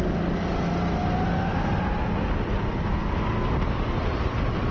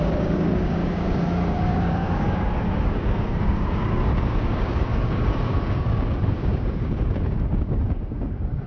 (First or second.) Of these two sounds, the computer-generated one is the second